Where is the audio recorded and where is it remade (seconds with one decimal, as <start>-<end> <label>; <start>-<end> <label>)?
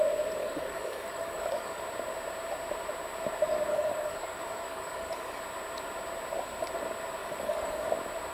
0.0-0.4 recorded; 0.4-1.8 remade; 1.8-3.7 recorded; 3.7-5.4 remade; 5.4-7.2 recorded; 7.2-7.9 remade; 7.9-8.3 recorded